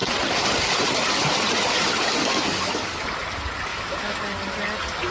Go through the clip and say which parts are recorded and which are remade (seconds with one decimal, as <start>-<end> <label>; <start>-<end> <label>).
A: 0.0-3.7 recorded; 3.7-4.2 remade; 4.2-5.1 recorded